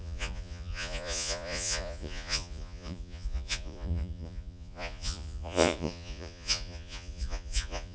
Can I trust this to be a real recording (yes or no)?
no